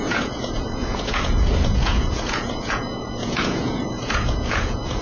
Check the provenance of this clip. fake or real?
fake